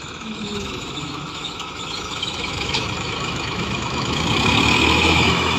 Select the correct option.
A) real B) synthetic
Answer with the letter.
B